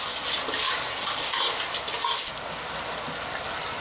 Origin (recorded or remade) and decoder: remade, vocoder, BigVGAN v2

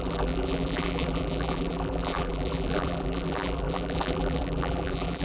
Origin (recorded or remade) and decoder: remade, vocoder, BigVGAN v2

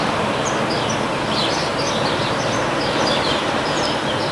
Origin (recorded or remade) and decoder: remade, vocoder, BigVGAN v2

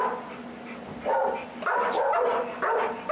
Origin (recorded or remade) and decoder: recorded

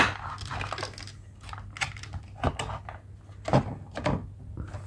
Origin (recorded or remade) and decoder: recorded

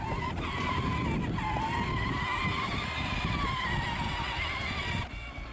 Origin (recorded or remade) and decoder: recorded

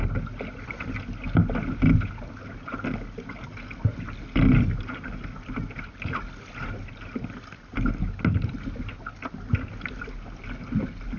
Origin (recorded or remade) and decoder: recorded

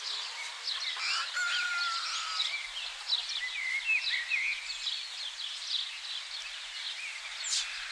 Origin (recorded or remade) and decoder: recorded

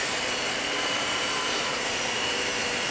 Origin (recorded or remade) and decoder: remade, vocoder, BigVGAN v2